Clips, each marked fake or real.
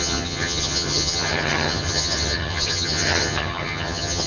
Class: fake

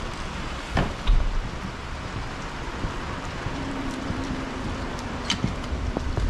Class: fake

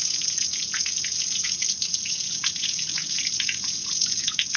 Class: fake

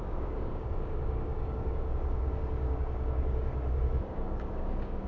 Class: fake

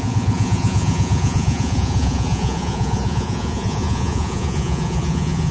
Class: fake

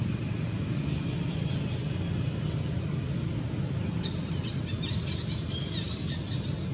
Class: real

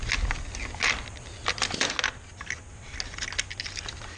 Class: real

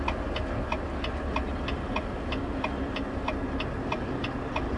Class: real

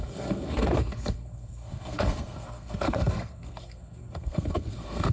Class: fake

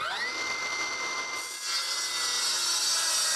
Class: real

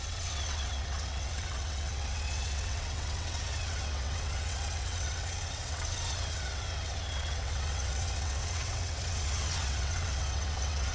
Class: fake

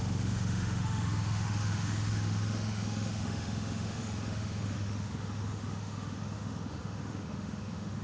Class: fake